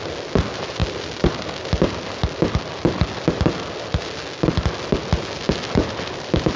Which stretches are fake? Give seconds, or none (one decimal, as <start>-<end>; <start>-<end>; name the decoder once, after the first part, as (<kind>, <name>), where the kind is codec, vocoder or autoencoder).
none

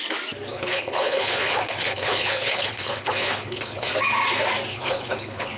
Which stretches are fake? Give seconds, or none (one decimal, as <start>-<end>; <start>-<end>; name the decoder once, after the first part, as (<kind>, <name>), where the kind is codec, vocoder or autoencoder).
0.5-3.9 (codec, HILCodec); 4.7-5.6

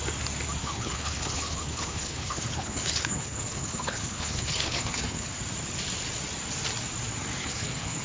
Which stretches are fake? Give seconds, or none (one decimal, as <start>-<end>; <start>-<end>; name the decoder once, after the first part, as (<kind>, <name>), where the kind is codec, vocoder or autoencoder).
0.6-5.4 (codec, HILCodec); 7.4-8.0

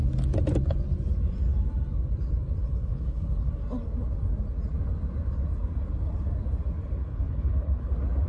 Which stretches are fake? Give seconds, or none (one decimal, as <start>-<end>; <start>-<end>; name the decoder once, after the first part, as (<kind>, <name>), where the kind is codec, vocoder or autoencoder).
2.6-3.5 (codec, HILCodec); 7.0-7.9